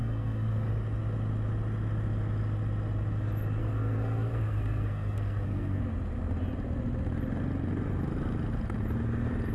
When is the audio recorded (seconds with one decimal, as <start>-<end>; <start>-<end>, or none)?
0.7-3.6; 5.8-9.5